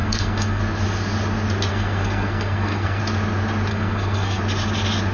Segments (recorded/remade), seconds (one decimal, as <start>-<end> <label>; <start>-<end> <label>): 0.0-0.6 remade; 0.6-1.7 recorded; 1.7-3.0 remade; 3.0-3.7 recorded; 3.7-4.4 remade; 4.4-5.1 recorded

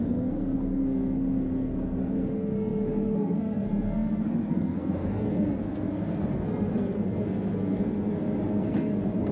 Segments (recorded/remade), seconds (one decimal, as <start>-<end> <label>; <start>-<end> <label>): 0.0-9.3 remade

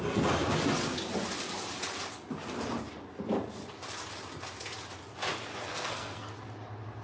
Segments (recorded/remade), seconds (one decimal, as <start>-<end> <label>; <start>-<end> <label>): 0.0-5.5 recorded; 5.5-6.3 remade; 6.3-7.0 recorded

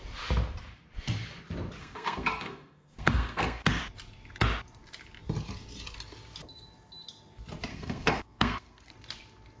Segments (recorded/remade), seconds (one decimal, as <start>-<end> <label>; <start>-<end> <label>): 0.0-1.8 recorded; 1.8-3.8 remade; 3.8-7.7 recorded; 7.7-8.9 remade; 8.9-9.6 recorded

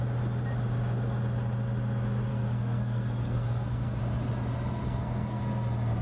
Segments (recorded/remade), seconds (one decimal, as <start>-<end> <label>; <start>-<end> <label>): 0.0-2.3 recorded; 2.3-4.0 remade; 4.0-4.8 recorded; 4.8-5.4 remade; 5.4-6.0 recorded

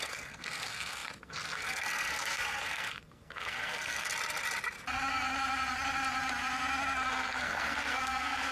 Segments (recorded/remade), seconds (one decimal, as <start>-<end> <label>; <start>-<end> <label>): 0.0-4.1 remade; 4.1-7.1 recorded; 7.1-8.5 remade

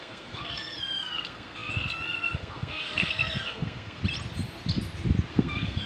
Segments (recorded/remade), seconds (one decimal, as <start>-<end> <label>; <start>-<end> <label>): 0.0-4.0 remade; 4.0-5.3 recorded; 5.3-5.9 remade